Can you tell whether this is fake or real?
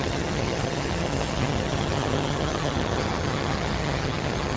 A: fake